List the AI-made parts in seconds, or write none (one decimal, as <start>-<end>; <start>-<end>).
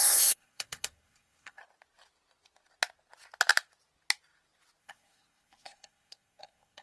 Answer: 0.0-1.6; 4.8-6.8